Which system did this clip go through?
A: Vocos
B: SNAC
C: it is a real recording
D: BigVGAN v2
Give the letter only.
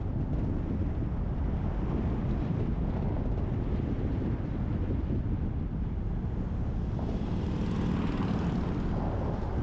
C